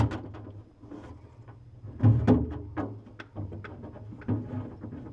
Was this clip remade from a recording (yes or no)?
no